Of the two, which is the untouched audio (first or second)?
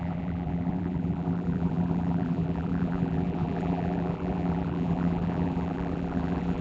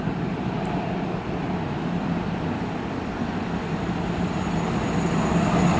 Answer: second